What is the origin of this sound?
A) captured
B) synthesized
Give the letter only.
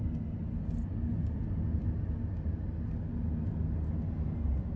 A